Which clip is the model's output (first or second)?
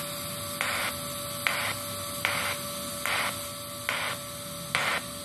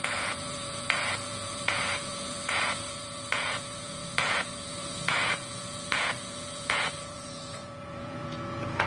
second